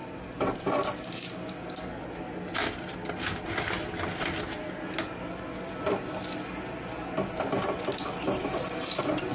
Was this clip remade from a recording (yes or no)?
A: no